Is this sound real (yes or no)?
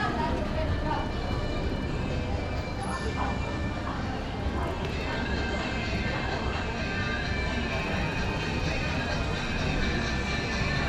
yes